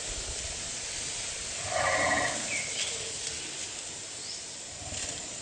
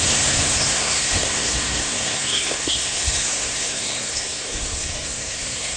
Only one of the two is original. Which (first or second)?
first